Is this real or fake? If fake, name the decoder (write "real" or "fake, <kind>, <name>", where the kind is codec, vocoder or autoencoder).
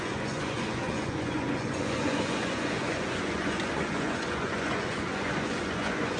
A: fake, vocoder, Vocos